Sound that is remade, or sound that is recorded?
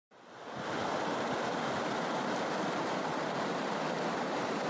recorded